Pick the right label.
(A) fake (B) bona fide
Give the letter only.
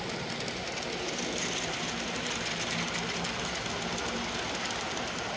B